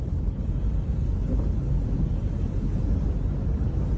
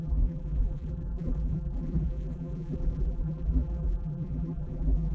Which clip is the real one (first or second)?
first